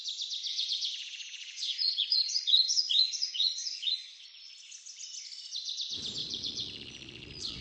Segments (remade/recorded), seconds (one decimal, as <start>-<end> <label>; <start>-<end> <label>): 0.0-0.5 recorded; 0.5-4.5 remade; 4.5-6.2 recorded; 6.2-7.6 remade